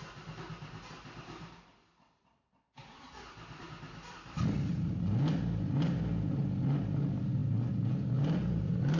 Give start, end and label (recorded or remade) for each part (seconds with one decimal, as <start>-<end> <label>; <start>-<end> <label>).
0.0-9.0 recorded

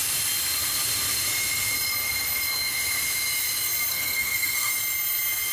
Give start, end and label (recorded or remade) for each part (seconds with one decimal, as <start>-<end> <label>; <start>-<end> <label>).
0.0-3.9 recorded; 3.9-4.7 remade; 4.7-5.5 recorded

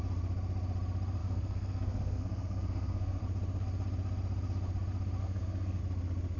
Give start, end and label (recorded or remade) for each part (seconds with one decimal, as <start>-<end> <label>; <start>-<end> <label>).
0.0-1.2 recorded; 1.2-3.2 remade; 3.2-5.2 recorded; 5.2-5.8 remade; 5.8-6.4 recorded

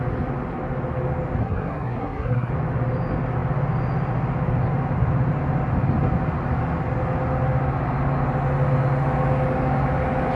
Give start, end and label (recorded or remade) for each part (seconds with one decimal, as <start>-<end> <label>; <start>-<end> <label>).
0.0-1.4 recorded; 1.4-2.5 remade; 2.5-10.4 recorded

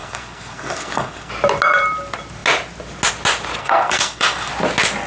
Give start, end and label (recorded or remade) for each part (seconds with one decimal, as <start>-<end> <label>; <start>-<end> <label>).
0.0-1.3 remade; 1.3-3.6 recorded; 3.6-4.5 remade; 4.5-5.1 recorded

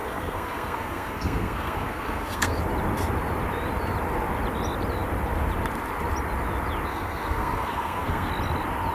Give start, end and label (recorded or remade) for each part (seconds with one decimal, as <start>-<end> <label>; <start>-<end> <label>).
0.0-2.6 remade; 2.6-6.9 recorded; 6.9-8.3 remade; 8.3-8.9 recorded

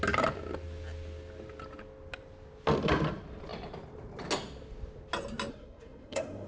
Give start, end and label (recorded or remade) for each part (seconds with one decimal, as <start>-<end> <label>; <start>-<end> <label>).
0.0-5.5 recorded; 5.5-6.5 remade

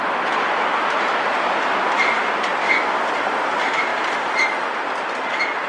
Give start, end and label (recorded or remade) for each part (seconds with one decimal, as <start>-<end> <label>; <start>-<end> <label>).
0.0-5.7 recorded